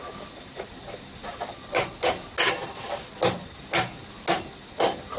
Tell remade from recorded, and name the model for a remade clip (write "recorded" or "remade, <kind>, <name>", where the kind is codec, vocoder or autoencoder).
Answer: recorded